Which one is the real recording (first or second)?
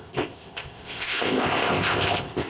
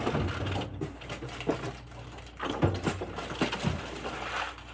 second